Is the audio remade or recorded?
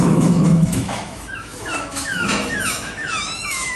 remade